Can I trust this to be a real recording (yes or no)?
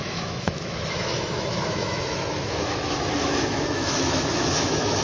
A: no